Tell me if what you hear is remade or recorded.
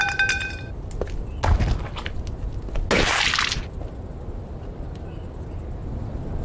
recorded